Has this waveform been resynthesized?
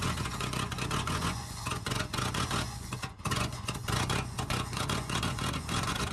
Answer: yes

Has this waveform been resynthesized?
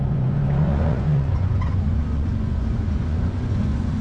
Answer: yes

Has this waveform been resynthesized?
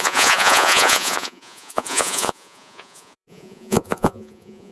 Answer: yes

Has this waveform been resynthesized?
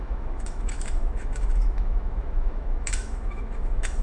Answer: yes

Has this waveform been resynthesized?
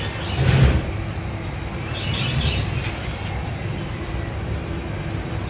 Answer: no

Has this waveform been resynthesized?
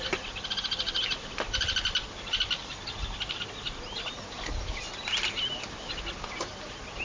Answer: no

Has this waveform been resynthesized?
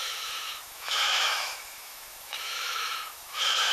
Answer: yes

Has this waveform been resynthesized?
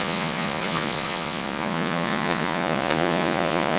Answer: yes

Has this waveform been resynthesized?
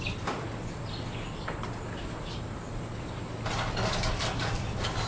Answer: yes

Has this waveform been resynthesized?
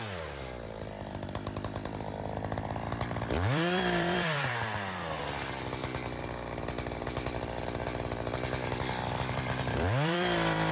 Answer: yes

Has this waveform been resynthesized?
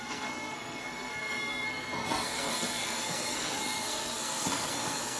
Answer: yes